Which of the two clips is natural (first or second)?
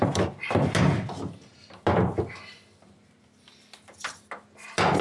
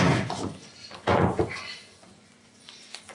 first